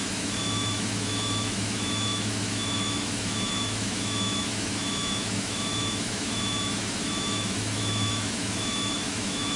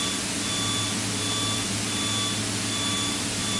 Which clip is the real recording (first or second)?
second